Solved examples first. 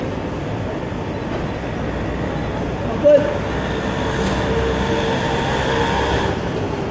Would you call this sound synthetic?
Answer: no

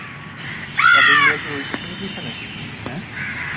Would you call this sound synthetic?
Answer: no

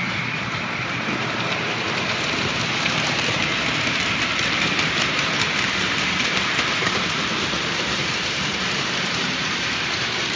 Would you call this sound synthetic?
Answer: yes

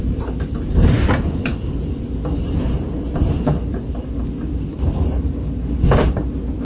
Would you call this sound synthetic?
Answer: yes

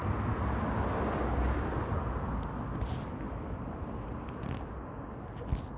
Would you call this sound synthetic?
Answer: no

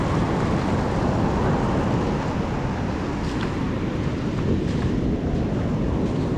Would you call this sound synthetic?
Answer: no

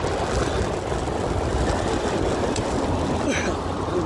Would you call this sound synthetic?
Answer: no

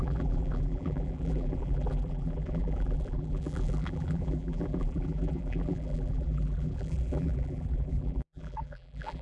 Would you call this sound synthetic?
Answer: yes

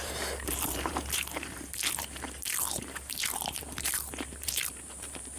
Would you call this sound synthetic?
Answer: yes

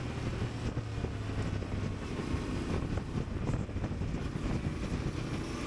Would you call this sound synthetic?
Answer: no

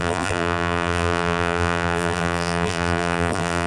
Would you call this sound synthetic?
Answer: yes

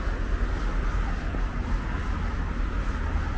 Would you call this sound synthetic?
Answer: no